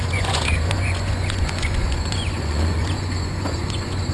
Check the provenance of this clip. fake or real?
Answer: fake